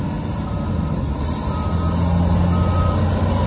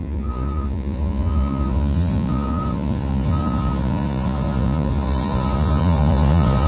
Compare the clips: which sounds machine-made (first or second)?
second